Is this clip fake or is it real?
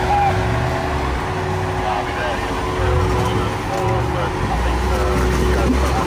real